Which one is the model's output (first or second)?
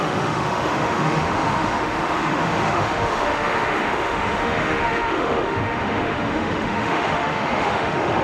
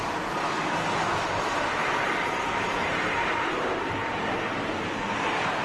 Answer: first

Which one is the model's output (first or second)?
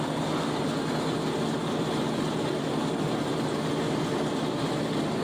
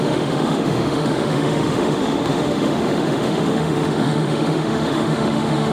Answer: second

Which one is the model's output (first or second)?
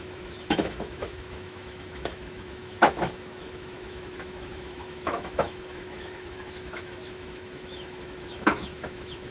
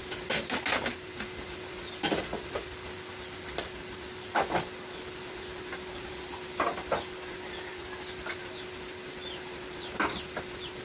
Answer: first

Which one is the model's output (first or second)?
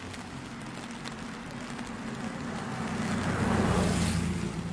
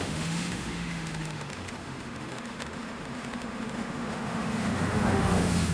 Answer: second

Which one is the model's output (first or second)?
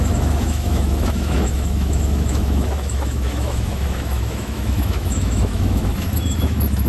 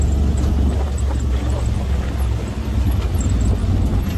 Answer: first